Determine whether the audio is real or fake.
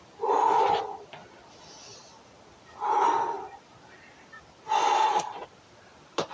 real